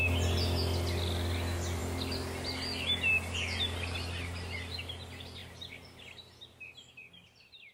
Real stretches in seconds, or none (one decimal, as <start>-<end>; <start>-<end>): 0.0-7.7